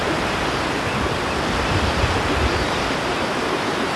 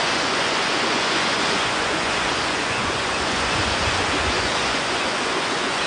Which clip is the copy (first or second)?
second